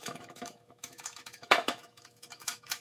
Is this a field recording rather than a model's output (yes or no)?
no